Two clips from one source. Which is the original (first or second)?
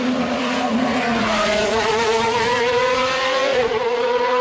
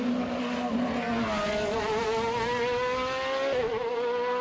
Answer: second